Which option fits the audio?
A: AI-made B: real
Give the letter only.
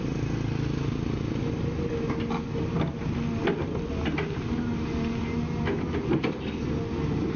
B